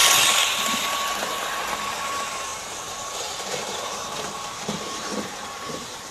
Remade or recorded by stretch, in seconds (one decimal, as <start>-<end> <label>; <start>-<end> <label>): 0.0-2.0 recorded; 2.0-6.1 remade